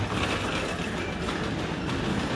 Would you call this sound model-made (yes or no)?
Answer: no